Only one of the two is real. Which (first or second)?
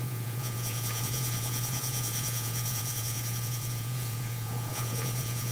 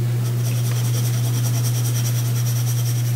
second